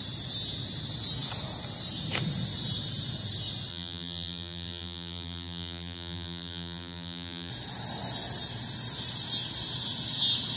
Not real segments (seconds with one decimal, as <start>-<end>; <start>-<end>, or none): 3.7-7.5